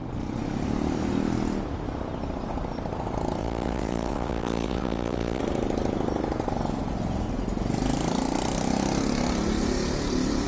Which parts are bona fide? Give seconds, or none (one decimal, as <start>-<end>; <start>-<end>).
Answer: 0.0-3.4; 5.4-10.5